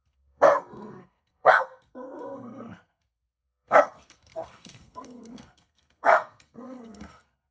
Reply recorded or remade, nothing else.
remade